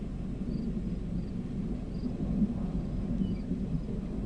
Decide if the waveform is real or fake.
real